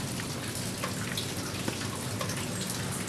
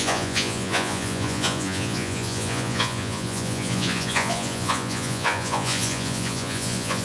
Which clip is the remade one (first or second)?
second